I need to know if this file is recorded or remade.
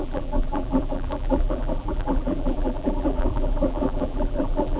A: remade